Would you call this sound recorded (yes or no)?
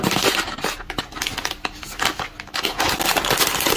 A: yes